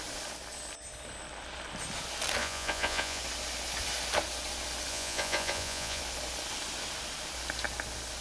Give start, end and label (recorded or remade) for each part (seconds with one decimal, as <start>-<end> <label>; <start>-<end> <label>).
0.0-2.4 recorded; 2.4-3.2 remade; 3.2-4.9 recorded; 4.9-6.0 remade; 6.0-8.2 recorded